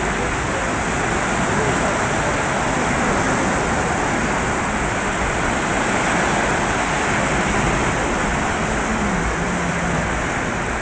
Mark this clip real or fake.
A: real